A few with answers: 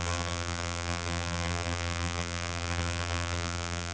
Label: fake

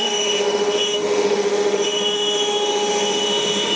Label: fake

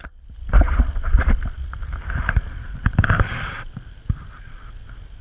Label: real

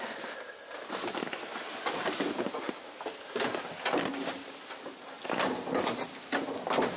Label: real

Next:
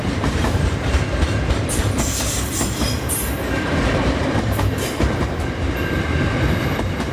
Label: fake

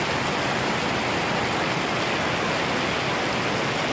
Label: real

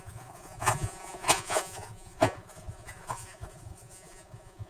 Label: fake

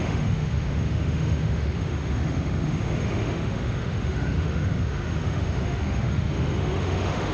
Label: fake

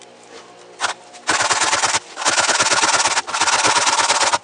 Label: real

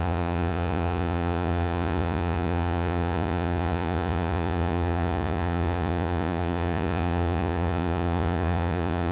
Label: fake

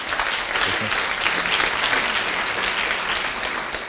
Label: real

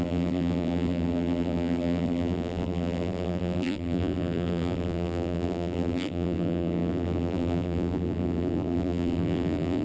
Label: fake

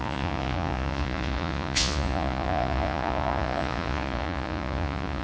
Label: fake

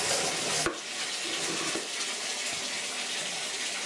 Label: real